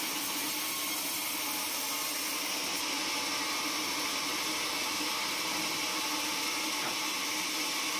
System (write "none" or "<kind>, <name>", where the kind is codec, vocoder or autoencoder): none